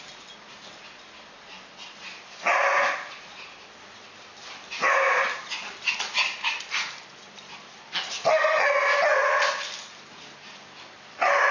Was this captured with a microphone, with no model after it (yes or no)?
yes